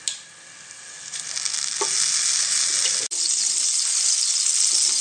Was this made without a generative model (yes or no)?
yes